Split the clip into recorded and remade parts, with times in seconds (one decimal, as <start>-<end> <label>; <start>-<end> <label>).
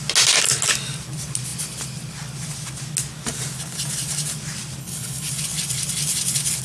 0.0-4.8 recorded; 4.8-5.3 remade; 5.3-6.6 recorded